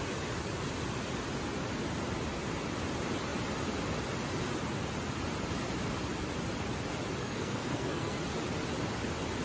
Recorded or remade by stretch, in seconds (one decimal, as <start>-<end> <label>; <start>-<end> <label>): 0.0-7.2 recorded; 7.2-8.2 remade; 8.2-9.4 recorded